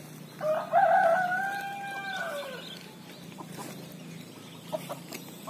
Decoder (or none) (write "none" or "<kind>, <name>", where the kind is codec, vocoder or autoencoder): none